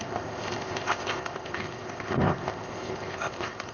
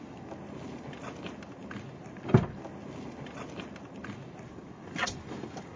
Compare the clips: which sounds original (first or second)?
second